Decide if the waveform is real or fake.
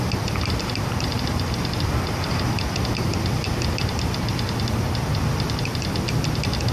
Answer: real